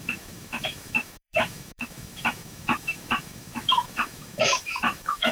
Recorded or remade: remade